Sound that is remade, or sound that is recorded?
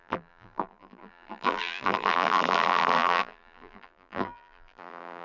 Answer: remade